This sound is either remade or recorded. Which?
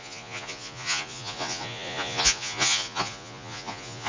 remade